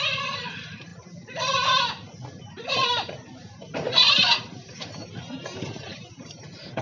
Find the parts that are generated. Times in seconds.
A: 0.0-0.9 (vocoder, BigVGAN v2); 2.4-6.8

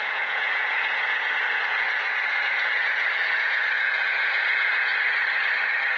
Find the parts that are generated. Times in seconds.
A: 0.0-4.9 (vocoder, Vocos); 5.6-6.0

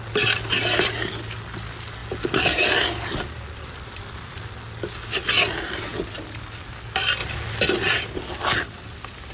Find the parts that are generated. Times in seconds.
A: 2.0-4.5 (vocoder, BigVGAN v2); 5.9-6.7

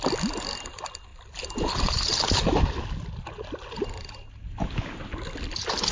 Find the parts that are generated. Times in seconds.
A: none

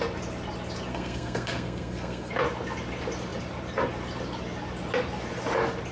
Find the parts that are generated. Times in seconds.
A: 0.9-2.3 (codec, SNAC)

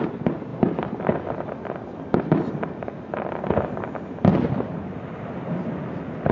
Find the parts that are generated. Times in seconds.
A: 0.0-0.5 (vocoder, BigVGAN v2); 2.2-6.3

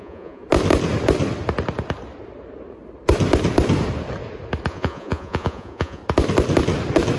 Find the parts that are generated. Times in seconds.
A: 0.0-0.4 (vocoder, Vocos); 4.7-6.0

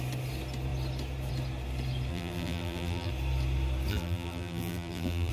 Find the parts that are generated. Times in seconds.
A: 2.1-3.1 (vocoder, BigVGAN v2); 3.9-5.3